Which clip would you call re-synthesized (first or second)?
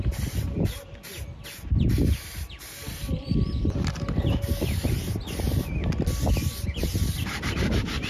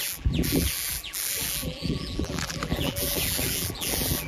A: second